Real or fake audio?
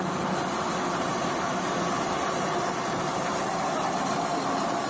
real